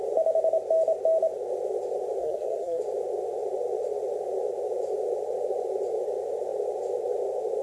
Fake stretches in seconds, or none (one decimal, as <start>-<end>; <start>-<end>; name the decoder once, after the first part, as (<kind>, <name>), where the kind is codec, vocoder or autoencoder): 2.2-2.8 (codec, SNAC)